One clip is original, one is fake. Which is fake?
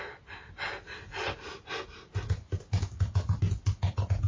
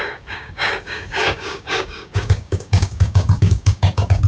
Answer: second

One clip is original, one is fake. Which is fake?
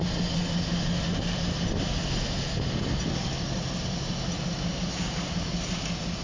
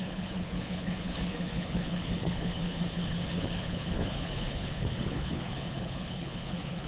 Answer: second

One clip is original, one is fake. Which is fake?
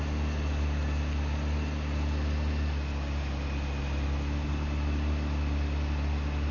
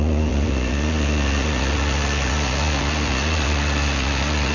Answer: second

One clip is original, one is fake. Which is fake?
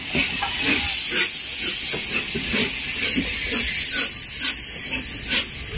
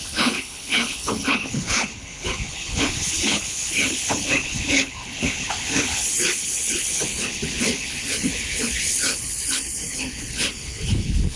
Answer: second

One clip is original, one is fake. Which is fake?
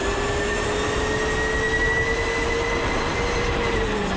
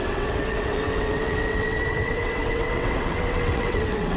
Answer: second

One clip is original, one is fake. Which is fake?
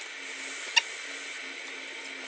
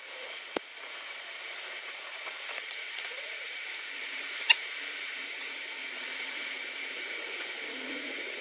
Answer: second